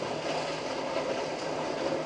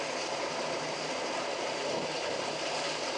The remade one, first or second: second